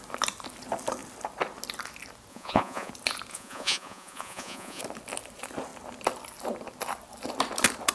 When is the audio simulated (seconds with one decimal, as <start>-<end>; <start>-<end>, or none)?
2.3-2.9; 3.3-4.8